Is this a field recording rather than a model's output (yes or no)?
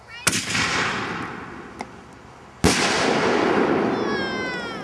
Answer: yes